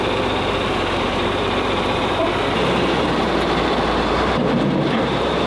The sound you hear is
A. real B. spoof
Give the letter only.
B